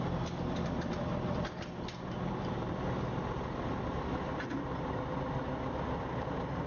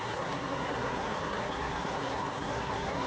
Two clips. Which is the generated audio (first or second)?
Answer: second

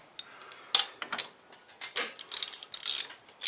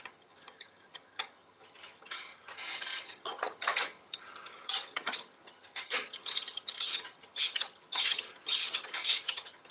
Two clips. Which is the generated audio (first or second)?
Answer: second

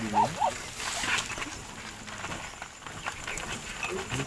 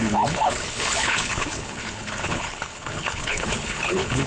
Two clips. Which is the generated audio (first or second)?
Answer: second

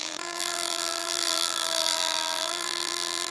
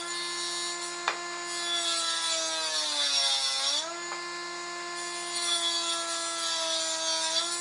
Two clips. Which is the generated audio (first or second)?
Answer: first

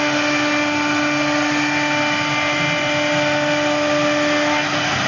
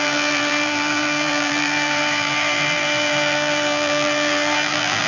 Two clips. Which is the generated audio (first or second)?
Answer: second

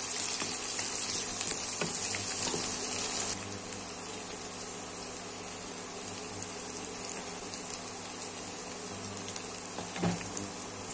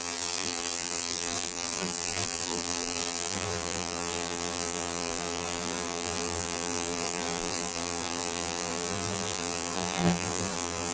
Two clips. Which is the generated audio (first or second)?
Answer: second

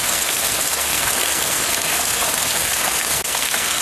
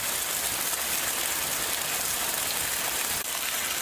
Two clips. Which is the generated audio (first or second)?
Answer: first